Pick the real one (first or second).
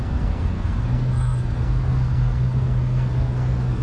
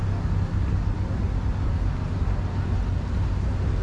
second